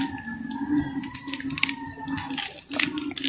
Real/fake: real